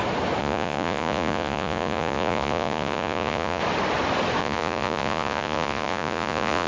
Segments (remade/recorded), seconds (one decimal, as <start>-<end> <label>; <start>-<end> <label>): 0.0-0.4 recorded; 0.4-3.6 remade; 3.6-4.4 recorded; 4.4-6.7 remade